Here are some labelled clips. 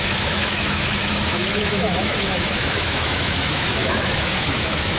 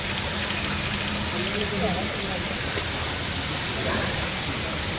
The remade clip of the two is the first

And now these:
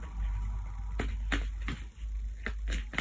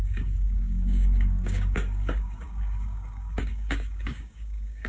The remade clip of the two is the second